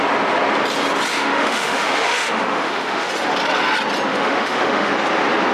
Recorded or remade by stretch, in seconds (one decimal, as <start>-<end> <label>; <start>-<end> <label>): 0.0-1.1 recorded; 1.1-3.1 remade; 3.1-4.1 recorded; 4.1-4.9 remade; 4.9-5.5 recorded